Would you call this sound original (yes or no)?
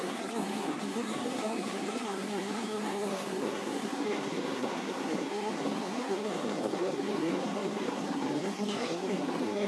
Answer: no